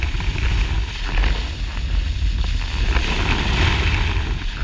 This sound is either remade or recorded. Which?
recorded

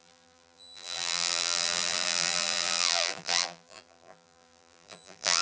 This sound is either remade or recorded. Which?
remade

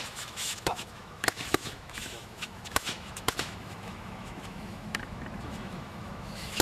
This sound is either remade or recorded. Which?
remade